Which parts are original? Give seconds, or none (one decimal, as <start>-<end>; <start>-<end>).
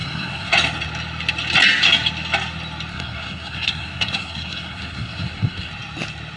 0.5-2.9; 5.7-6.4